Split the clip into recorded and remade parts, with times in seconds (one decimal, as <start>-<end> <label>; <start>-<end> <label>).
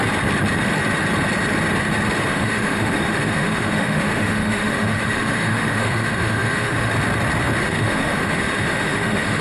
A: 0.0-2.3 recorded; 2.3-6.9 remade; 6.9-7.6 recorded; 7.6-9.4 remade